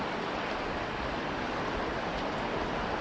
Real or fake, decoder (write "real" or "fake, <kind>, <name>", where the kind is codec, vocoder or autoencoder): real